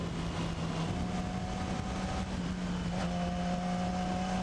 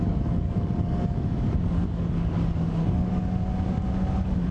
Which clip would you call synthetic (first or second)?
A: second